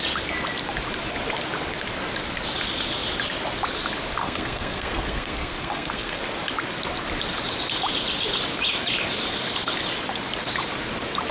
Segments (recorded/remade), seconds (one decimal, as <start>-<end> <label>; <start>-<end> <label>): 0.0-4.2 recorded; 4.2-6.2 remade; 6.2-11.3 recorded